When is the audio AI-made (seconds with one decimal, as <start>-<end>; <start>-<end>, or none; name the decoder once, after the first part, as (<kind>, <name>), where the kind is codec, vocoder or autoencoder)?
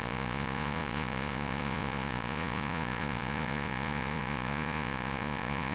0.0-5.7 (vocoder, Vocos)